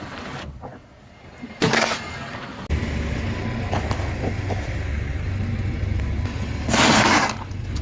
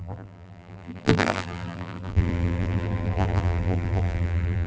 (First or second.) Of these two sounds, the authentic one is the first